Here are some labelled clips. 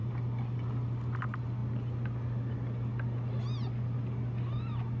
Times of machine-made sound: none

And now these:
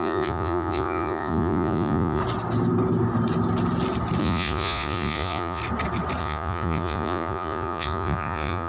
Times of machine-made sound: 0.0-2.2 (vocoder, Vocos); 4.2-5.6; 6.2-8.7

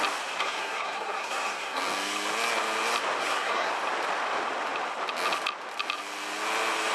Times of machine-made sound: 0.4-1.8 (codec, SNAC); 3.2-3.7

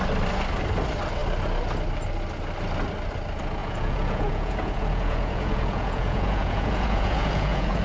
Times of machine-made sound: 3.6-7.8 (vocoder, Vocos)

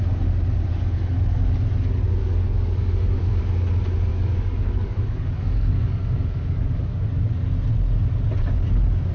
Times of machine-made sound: 2.2-3.4 (codec, DAC); 4.1-7.3